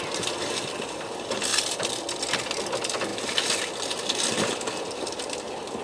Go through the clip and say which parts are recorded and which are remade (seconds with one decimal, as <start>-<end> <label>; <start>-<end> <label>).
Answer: 0.0-1.5 recorded; 1.5-2.3 remade; 2.3-3.1 recorded; 3.1-3.7 remade; 3.7-5.8 recorded

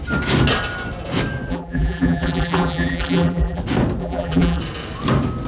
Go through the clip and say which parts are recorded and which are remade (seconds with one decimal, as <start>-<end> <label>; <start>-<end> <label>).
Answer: 0.0-1.5 recorded; 1.5-3.6 remade; 3.6-4.0 recorded; 4.0-4.6 remade; 4.6-5.5 recorded

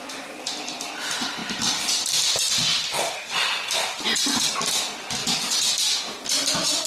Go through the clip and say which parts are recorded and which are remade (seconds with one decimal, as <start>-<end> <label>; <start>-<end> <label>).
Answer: 0.0-6.9 recorded

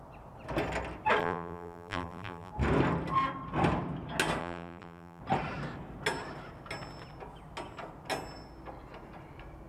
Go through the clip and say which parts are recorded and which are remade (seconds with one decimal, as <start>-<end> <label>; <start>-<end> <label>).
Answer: 0.0-1.2 recorded; 1.2-2.5 remade; 2.5-4.4 recorded; 4.4-5.2 remade; 5.2-9.7 recorded

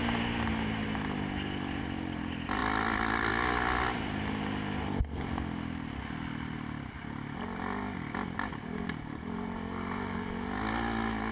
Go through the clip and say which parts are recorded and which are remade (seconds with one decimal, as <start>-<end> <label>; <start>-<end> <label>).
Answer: 0.0-2.6 recorded; 2.6-3.3 remade; 3.3-11.3 recorded

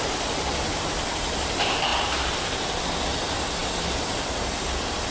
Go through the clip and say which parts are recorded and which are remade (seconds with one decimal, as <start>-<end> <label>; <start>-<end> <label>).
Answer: 0.0-5.1 recorded